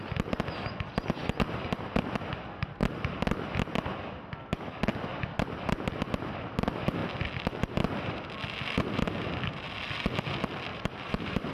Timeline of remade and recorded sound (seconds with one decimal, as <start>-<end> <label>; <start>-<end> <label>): 0.0-10.7 recorded; 10.7-11.5 remade